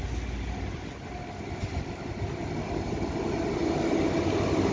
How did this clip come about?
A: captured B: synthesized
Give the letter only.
A